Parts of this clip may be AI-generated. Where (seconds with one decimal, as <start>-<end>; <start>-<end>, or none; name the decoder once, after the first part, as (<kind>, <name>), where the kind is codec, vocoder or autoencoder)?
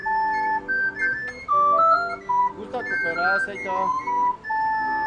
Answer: none